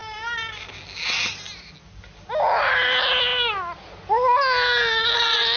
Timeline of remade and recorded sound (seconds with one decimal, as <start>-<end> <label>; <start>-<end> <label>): 0.0-5.6 recorded